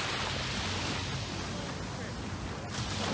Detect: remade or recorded recorded